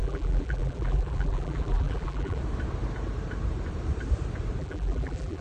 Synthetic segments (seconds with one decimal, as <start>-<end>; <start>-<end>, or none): 0.0-2.4; 4.6-5.4